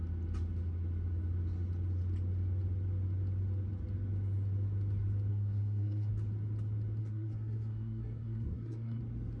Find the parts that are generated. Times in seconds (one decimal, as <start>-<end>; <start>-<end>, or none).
5.3-6.1; 7.0-9.0